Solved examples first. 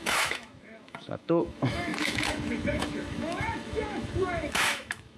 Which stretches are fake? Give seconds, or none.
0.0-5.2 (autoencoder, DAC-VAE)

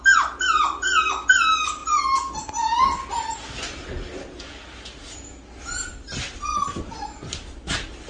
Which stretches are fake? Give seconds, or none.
none

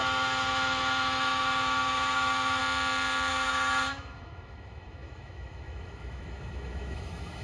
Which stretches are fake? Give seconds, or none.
0.0-2.6 (autoencoder, DAC-VAE); 3.3-7.4

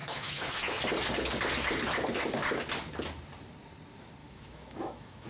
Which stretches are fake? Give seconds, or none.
0.0-0.8 (autoencoder, DAC-VAE); 4.2-5.3

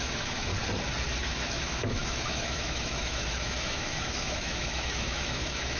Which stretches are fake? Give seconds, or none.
0.0-0.5 (autoencoder, DAC-VAE); 1.2-5.8

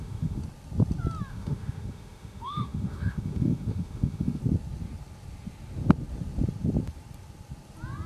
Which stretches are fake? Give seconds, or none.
0.0-0.4 (autoencoder, DAC-VAE); 1.3-4.4

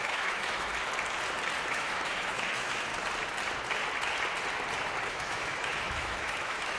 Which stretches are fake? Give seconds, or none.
0.0-0.7 (autoencoder, DAC-VAE); 1.7-2.9; 5.1-6.8